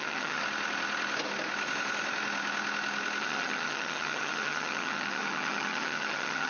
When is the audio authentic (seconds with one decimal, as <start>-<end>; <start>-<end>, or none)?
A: 0.4-3.2